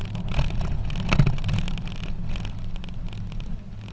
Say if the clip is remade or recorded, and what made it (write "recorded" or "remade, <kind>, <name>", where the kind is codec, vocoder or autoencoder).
recorded